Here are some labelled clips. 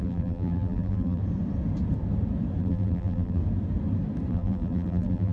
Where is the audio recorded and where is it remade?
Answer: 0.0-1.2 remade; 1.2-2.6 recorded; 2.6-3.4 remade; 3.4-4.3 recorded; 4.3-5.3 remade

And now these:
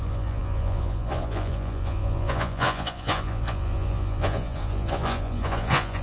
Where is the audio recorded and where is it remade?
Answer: 0.0-6.0 remade

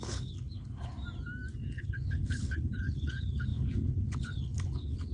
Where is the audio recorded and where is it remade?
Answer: 0.0-0.9 remade; 0.9-1.6 recorded; 1.6-5.1 remade

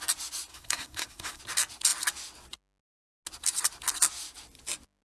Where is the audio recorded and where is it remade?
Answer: 0.0-0.5 recorded; 0.5-1.4 remade; 1.4-5.0 recorded

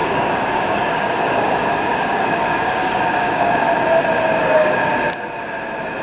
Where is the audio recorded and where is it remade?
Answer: 0.0-3.6 remade; 3.6-4.3 recorded; 4.3-4.9 remade; 4.9-6.0 recorded

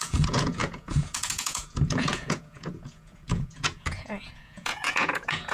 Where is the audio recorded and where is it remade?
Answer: 0.0-5.5 remade

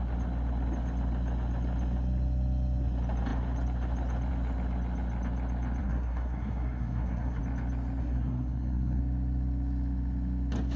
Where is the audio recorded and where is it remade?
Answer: 0.0-5.8 recorded; 5.8-7.4 remade; 7.4-8.0 recorded; 8.0-9.0 remade; 9.0-10.8 recorded

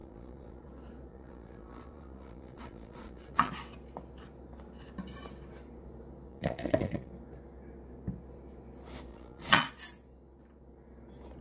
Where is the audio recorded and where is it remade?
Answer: 0.0-0.7 remade; 0.7-1.1 recorded; 1.1-3.5 remade; 3.5-6.3 recorded; 6.3-7.1 remade; 7.1-9.1 recorded; 9.1-9.7 remade; 9.7-11.4 recorded